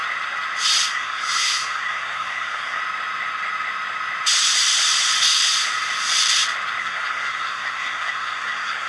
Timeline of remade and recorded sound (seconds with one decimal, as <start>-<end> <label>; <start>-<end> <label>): 0.0-0.9 recorded; 0.9-2.8 remade; 2.8-6.8 recorded; 6.8-8.9 remade